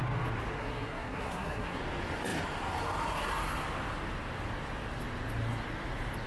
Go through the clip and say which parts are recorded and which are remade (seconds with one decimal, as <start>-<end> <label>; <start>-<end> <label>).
0.0-0.6 recorded; 0.6-1.8 remade; 1.8-6.3 recorded

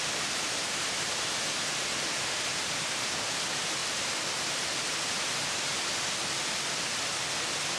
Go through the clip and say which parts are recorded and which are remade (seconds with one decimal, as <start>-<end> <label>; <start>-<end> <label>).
0.0-7.8 recorded

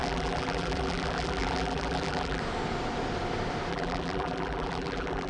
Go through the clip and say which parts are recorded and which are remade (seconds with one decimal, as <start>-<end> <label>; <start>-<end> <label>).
0.0-2.4 remade; 2.4-3.7 recorded; 3.7-5.3 remade

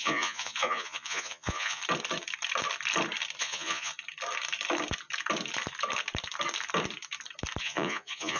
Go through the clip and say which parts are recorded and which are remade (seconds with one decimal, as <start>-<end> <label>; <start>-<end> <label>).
0.0-1.8 remade; 1.8-3.4 recorded; 3.4-3.9 remade; 3.9-7.6 recorded; 7.6-8.4 remade

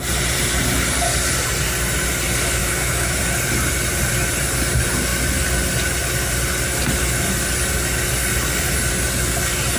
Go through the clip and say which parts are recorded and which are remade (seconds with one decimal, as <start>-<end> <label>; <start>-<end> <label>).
0.0-2.6 recorded; 2.6-3.2 remade; 3.2-9.8 recorded

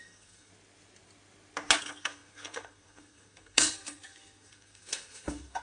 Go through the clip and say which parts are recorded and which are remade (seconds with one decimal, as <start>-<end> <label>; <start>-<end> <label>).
0.0-0.5 remade; 0.5-1.8 recorded; 1.8-5.6 remade

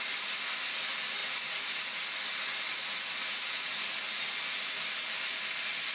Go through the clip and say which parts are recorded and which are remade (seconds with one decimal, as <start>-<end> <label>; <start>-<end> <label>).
0.0-1.2 remade; 1.2-4.7 recorded; 4.7-5.9 remade